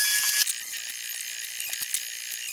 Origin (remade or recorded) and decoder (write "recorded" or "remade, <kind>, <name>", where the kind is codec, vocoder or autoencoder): recorded